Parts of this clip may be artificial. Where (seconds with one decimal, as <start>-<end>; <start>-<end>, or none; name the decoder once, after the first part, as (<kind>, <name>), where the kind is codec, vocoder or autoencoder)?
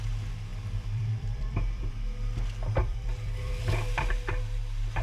0.5-1.9 (vocoder, BigVGAN v2); 2.8-3.7